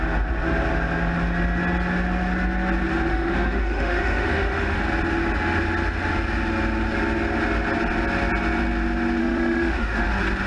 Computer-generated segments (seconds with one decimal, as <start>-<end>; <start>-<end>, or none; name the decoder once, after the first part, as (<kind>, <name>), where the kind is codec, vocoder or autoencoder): 3.1-4.8 (autoencoder, DAC-VAE); 9.2-10.1